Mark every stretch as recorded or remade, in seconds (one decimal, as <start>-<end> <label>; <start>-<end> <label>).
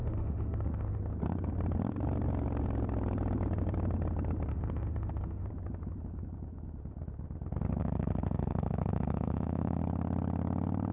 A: 0.0-1.0 remade; 1.0-4.5 recorded; 4.5-5.5 remade; 5.5-7.8 recorded; 7.8-9.8 remade; 9.8-10.9 recorded